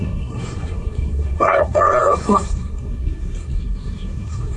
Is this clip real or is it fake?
fake